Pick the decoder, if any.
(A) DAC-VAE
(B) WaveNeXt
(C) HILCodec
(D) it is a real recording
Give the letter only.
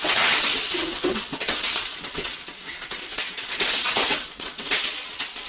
B